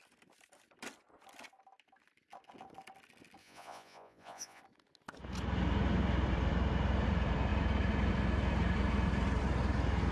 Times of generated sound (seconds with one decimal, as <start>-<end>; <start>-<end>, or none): 3.4-4.6